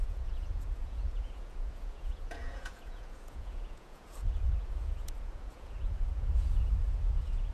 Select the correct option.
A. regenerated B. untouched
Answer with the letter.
A